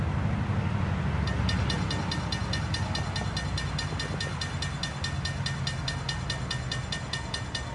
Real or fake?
real